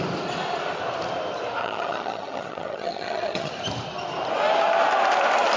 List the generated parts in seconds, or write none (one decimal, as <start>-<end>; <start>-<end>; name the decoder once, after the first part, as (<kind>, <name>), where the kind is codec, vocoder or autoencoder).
1.6-3.5 (vocoder, HiFi-GAN)